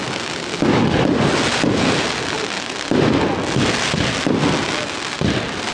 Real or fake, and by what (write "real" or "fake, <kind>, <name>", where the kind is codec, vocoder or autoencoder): real